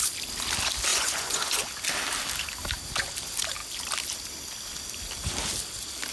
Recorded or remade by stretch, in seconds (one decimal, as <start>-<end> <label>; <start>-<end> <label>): 0.0-0.9 recorded; 0.9-1.6 remade; 1.6-6.1 recorded